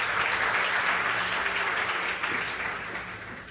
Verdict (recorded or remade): recorded